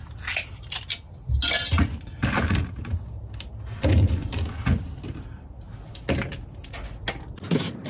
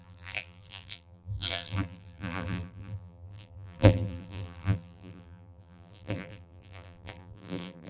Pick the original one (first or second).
first